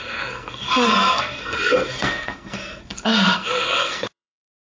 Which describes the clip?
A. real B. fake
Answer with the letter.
B